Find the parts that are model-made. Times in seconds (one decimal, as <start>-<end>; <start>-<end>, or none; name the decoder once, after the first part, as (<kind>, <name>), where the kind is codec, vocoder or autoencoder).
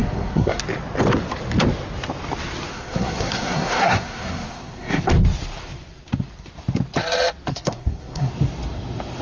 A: 0.0-0.6 (codec, SNAC); 2.7-5.0; 7.5-8.3